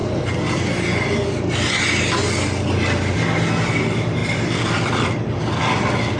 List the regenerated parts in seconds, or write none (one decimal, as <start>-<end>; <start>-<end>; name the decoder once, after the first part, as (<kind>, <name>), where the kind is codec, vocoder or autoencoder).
none